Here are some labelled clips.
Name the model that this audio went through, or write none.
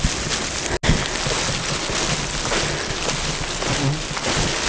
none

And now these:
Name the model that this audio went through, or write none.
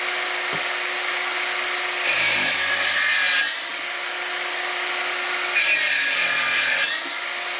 none